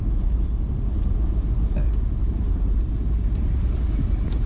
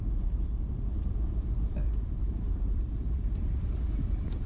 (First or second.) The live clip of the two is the first